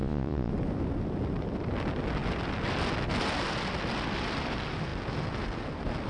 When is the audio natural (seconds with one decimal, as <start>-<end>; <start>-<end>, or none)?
0.5-6.1